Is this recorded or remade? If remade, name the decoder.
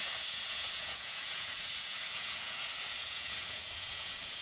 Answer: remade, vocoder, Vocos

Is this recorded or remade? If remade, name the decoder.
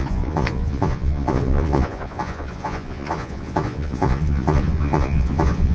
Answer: remade, vocoder, Vocos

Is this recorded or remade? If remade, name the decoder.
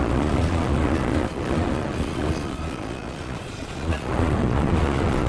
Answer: remade, vocoder, Vocos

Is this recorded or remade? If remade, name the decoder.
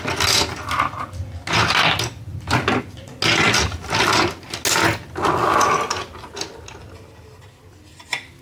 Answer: recorded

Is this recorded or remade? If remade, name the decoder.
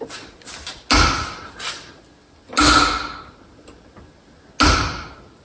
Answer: recorded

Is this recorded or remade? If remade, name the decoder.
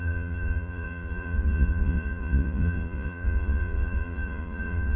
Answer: remade, vocoder, Vocos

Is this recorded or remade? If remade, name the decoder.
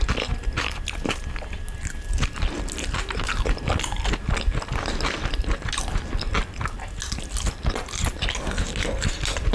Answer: recorded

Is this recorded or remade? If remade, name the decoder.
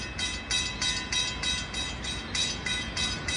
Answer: recorded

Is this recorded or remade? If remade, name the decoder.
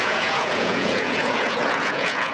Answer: remade, vocoder, Vocos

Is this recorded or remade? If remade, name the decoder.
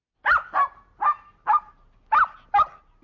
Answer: recorded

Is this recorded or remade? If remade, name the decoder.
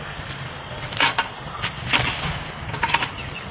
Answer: recorded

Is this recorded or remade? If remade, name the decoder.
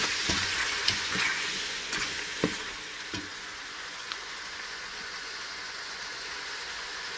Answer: remade, vocoder, Vocos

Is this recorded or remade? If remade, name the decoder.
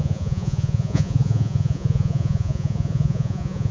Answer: remade, vocoder, Vocos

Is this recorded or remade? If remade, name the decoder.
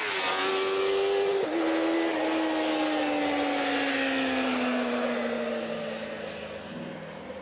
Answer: recorded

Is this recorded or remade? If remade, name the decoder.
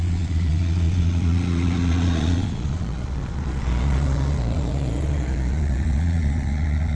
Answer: remade, vocoder, Vocos